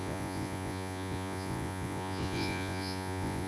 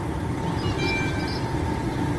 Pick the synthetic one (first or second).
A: first